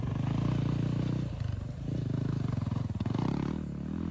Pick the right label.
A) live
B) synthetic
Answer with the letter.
A